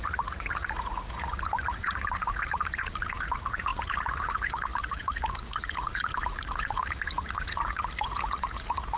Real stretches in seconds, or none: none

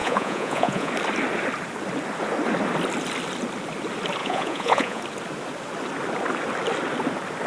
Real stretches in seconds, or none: 0.9-4.2; 5.0-7.5

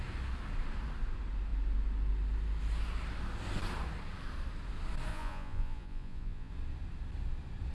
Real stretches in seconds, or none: 0.0-5.1; 6.5-7.7

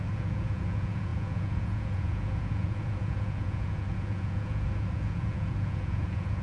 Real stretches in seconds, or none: none

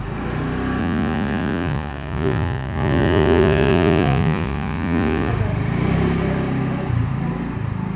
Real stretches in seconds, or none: 0.0-0.8; 5.3-8.0